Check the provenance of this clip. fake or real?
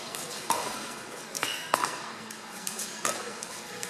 fake